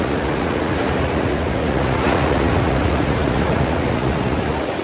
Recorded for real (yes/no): no